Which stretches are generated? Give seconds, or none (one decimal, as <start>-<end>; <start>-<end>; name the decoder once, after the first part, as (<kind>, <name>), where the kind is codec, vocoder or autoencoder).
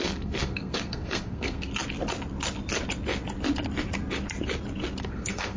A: 0.0-1.7 (codec, SNAC); 5.0-5.6